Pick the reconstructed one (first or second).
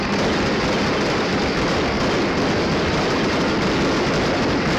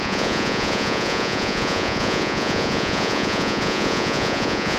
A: second